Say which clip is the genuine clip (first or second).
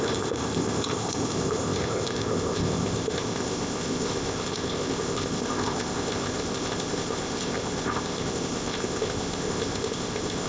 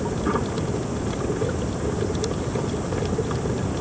second